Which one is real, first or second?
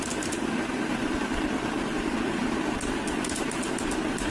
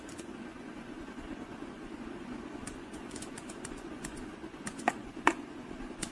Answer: first